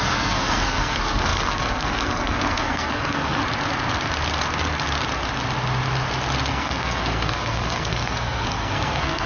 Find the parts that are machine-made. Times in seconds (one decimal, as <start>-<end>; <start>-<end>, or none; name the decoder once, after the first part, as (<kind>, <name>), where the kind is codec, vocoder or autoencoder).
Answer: 0.0-3.4 (codec, SNAC); 6.5-9.3